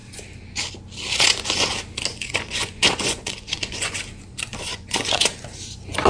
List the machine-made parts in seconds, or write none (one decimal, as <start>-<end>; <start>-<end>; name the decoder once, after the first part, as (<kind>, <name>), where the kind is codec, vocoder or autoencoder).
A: 2.1-4.0 (vocoder, Vocos); 4.5-5.4